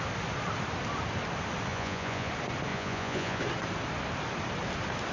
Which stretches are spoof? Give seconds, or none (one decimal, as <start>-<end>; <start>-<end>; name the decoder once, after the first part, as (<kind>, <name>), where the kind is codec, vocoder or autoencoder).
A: 1.7-2.3 (vocoder, Vocos); 2.7-3.4